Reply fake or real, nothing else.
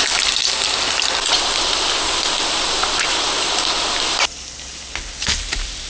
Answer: real